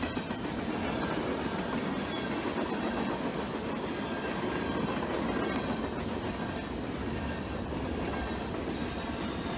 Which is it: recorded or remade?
recorded